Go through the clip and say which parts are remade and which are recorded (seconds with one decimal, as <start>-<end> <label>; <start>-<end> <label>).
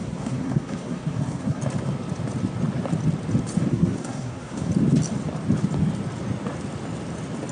0.0-1.6 remade; 1.6-3.7 recorded; 3.7-4.7 remade; 4.7-7.5 recorded